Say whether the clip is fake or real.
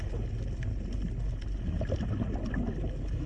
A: real